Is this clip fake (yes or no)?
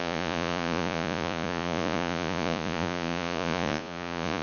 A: yes